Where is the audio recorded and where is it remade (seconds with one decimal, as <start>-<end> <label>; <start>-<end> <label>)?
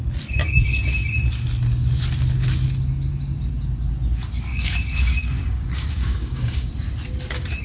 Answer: 0.0-4.5 recorded; 4.5-6.7 remade; 6.7-7.6 recorded